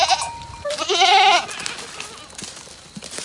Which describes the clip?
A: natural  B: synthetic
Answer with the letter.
A